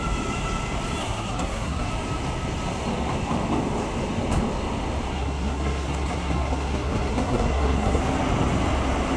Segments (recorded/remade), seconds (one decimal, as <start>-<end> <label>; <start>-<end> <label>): 0.0-1.0 recorded; 1.0-1.9 remade; 1.9-5.1 recorded; 5.1-8.0 remade; 8.0-9.2 recorded